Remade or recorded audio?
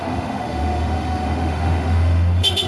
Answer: remade